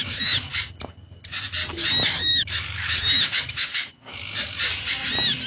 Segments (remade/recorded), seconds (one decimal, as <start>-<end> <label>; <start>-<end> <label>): 0.0-0.5 remade; 0.5-2.1 recorded; 2.1-4.3 remade; 4.3-5.5 recorded